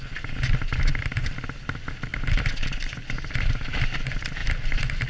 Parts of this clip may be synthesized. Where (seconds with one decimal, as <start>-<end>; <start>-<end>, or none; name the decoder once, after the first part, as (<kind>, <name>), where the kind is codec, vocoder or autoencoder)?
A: none